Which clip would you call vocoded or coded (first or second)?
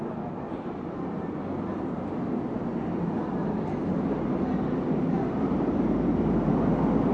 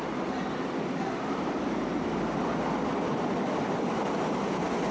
second